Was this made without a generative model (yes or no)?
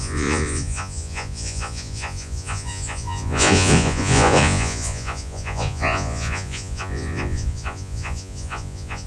no